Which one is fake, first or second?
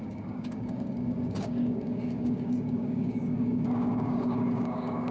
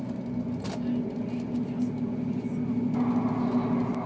first